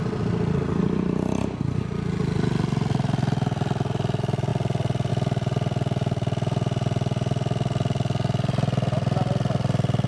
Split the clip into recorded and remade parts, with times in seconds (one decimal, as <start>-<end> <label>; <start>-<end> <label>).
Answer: 0.0-10.1 recorded